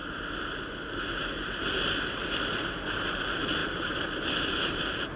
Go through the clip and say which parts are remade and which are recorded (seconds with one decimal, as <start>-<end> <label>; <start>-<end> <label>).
0.0-3.1 recorded; 3.1-5.2 remade